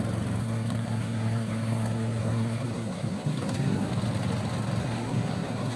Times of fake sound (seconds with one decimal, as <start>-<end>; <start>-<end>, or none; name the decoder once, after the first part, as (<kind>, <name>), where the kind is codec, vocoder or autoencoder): 0.4-3.9 (codec, SNAC); 4.8-5.8